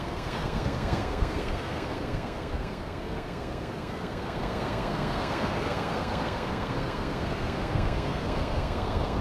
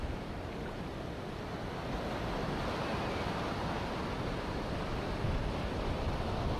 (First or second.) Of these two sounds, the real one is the second